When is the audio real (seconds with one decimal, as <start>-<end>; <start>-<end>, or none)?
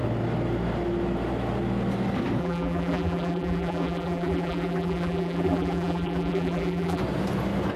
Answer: 0.0-2.4; 7.0-7.8